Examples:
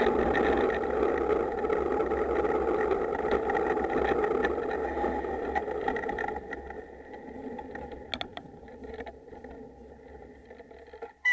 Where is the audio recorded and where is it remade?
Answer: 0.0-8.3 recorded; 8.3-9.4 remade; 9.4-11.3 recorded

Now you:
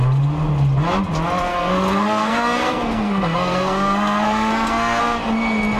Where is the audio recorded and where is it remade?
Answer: 0.0-1.5 recorded; 1.5-5.0 remade; 5.0-5.8 recorded

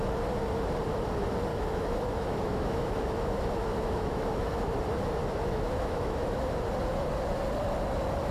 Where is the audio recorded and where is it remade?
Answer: 0.0-1.5 recorded; 1.5-4.7 remade; 4.7-5.2 recorded; 5.2-6.4 remade; 6.4-8.3 recorded

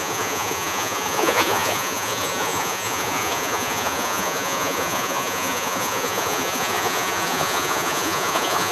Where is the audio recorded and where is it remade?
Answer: 0.0-8.7 remade

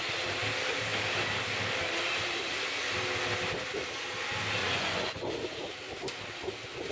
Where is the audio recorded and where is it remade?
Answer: 0.0-4.6 recorded; 4.6-5.3 remade; 5.3-6.9 recorded

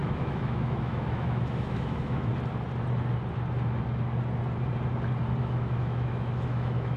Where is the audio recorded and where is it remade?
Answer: 0.0-2.3 remade; 2.3-5.4 recorded; 5.4-7.0 remade

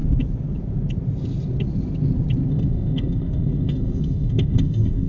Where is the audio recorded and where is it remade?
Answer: 0.0-2.5 recorded; 2.5-5.1 remade

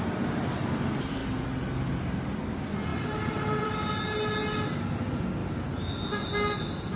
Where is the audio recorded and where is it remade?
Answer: 0.0-1.2 recorded; 1.2-1.9 remade; 1.9-2.9 recorded; 2.9-3.9 remade; 3.9-7.0 recorded